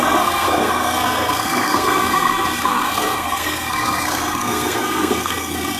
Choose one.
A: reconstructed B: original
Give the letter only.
A